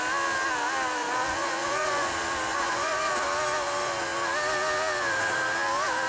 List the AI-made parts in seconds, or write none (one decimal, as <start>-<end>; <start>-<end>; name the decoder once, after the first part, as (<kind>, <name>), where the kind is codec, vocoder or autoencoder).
1.0-2.1 (vocoder, Vocos); 2.5-3.1